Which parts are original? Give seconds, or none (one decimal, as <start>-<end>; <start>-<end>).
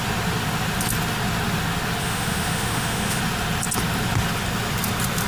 0.0-2.0; 3.2-5.3